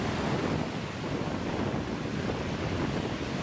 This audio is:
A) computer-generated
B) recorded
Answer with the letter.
B